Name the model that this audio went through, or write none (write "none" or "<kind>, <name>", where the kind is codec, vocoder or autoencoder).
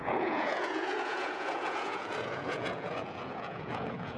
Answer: vocoder, Vocos